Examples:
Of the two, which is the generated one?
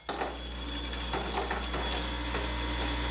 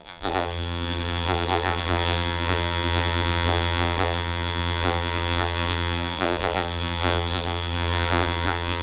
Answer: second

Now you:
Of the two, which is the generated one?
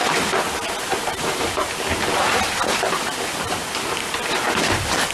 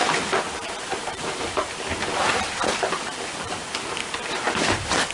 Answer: second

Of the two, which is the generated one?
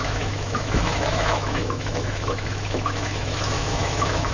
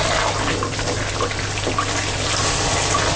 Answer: first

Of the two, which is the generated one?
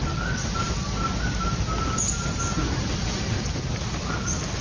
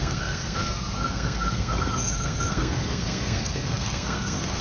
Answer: second